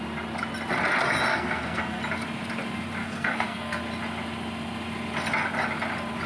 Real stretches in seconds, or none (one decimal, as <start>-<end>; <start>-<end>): 0.0-1.3; 2.0-3.0; 3.8-6.3